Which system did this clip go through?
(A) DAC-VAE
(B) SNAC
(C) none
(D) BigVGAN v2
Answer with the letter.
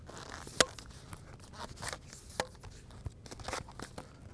C